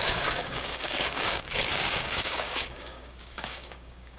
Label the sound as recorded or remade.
remade